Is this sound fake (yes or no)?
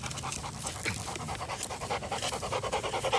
yes